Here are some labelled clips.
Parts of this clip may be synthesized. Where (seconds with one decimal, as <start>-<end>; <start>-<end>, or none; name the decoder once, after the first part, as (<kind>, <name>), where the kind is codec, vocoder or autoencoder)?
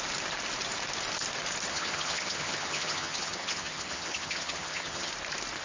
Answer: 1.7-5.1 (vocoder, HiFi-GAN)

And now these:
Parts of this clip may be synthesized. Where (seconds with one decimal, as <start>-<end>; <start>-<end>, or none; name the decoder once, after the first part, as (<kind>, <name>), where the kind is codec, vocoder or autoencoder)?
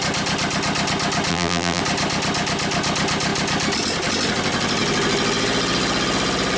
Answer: 1.3-1.8 (vocoder, BigVGAN v2)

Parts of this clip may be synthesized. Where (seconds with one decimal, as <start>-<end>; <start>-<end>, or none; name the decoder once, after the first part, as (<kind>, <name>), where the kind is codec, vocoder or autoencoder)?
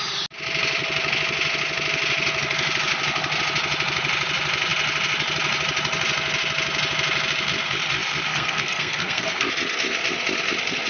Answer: 8.3-9.5 (codec, SNAC)